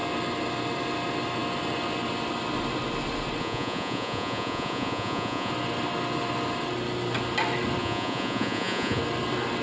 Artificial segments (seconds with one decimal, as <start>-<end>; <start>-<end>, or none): 3.4-5.5; 7.8-9.0